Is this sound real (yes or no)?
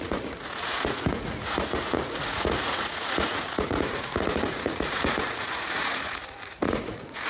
no